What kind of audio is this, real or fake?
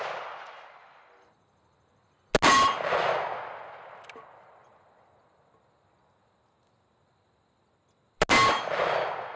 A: real